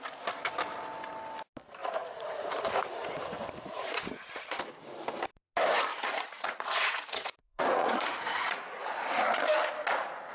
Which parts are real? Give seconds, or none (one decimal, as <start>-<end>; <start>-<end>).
0.0-1.8; 4.6-5.9; 9.0-10.3